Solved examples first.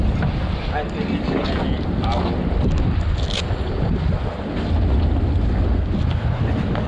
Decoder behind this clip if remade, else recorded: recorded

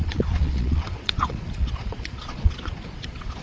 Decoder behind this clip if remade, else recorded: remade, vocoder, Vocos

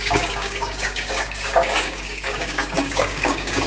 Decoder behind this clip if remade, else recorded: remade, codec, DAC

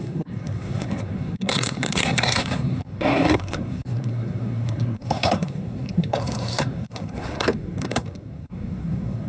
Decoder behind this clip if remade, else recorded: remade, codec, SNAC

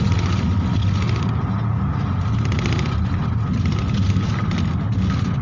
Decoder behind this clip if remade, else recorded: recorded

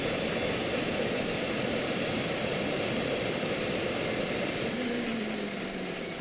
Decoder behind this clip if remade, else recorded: remade, vocoder, BigVGAN v2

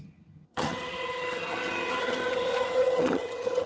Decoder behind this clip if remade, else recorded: remade, vocoder, HiFi-GAN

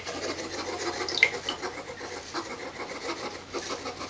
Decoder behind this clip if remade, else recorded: recorded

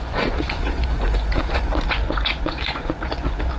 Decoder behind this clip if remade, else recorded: remade, vocoder, Vocos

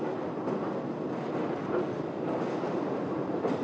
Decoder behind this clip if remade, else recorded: recorded